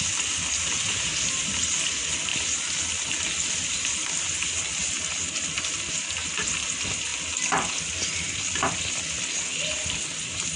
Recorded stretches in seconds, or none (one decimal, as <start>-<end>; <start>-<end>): 0.0-10.6